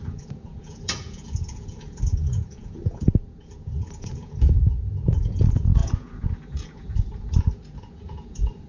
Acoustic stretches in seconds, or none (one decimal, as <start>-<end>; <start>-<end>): none